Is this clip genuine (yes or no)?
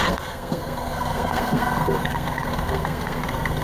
no